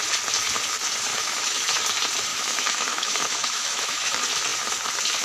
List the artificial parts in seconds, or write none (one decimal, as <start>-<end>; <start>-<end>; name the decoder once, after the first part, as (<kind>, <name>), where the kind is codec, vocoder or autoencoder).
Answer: 1.1-1.8 (autoencoder, DAC-VAE); 2.3-4.1

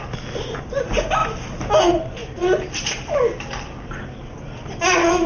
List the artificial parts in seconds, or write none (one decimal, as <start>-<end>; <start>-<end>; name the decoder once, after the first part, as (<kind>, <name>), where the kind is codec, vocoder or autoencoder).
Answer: none

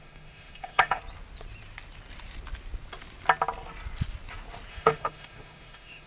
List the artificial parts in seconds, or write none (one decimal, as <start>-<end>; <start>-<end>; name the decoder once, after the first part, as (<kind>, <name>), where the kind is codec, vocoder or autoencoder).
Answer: 0.0-1.0 (autoencoder, DAC-VAE); 4.7-6.1

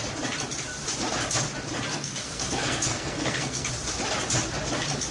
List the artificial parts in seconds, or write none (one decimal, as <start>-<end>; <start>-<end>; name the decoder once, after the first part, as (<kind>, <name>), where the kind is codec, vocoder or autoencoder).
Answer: 1.9-3.7 (codec, SNAC)

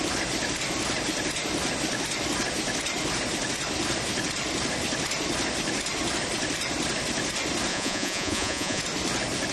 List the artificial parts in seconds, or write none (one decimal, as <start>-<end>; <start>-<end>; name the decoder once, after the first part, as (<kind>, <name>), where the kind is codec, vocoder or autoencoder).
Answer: 7.7-8.8 (vocoder, Vocos)